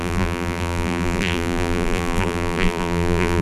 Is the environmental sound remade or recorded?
remade